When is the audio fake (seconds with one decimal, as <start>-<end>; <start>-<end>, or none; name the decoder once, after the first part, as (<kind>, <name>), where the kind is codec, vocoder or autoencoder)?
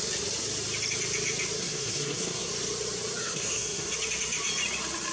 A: 1.6-2.5 (codec, SNAC); 3.2-3.9